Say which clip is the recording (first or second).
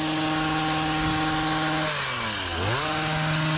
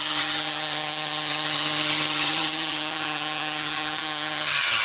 first